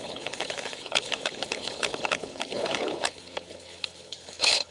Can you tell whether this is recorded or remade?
remade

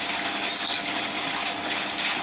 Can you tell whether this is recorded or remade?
recorded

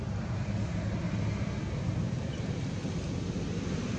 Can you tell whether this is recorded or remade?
recorded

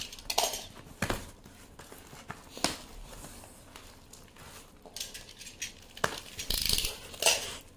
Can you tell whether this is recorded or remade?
recorded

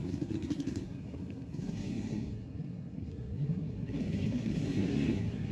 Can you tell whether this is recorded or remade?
remade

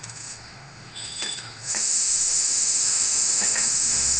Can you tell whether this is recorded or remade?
remade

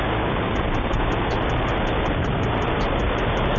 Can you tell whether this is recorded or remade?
remade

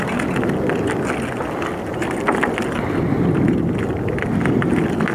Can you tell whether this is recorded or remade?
recorded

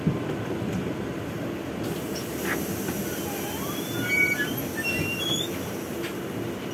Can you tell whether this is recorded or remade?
recorded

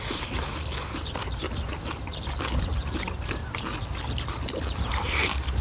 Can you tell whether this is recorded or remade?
recorded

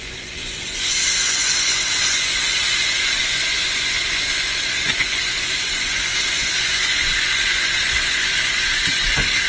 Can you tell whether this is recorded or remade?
remade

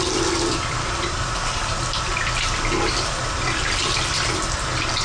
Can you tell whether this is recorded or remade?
recorded